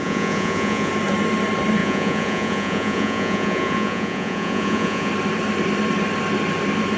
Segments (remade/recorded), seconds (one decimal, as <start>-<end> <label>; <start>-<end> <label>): 0.0-0.9 remade; 0.9-1.8 recorded; 1.8-5.1 remade; 5.1-7.0 recorded